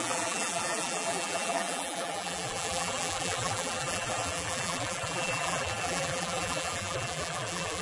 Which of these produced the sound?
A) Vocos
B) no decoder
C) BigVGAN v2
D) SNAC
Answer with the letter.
C